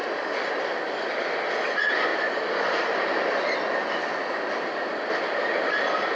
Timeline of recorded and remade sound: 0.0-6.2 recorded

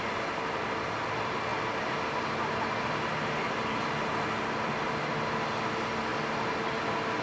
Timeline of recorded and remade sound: 0.0-7.2 recorded

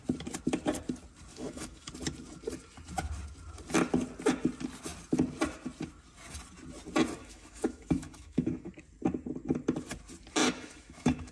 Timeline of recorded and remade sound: 0.0-1.3 recorded; 1.3-1.9 remade; 1.9-7.2 recorded; 7.2-8.7 remade; 8.7-10.4 recorded; 10.4-11.3 remade

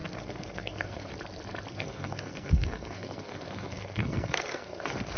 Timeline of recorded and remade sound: 0.0-1.1 remade; 1.1-1.7 recorded; 1.7-5.2 remade

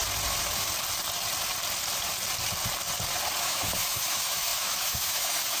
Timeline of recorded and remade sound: 0.0-3.4 recorded; 3.4-5.6 remade